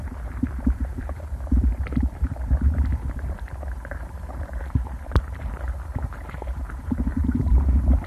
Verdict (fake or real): fake